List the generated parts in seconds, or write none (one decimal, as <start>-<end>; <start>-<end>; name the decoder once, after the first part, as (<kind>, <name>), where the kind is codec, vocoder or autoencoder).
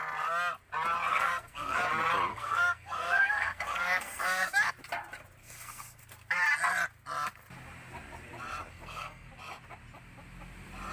1.1-1.8 (codec, SNAC); 2.3-4.7; 5.4-6.0; 8.7-9.3